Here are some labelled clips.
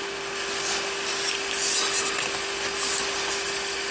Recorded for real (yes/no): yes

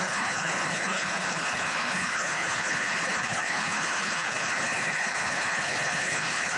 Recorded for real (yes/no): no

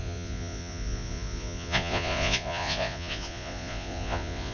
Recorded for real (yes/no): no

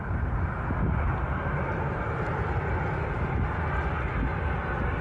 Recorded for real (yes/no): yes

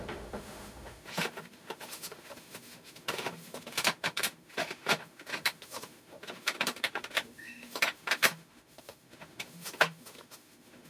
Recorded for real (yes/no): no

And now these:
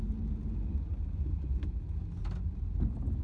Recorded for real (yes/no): yes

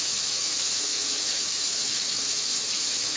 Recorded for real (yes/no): no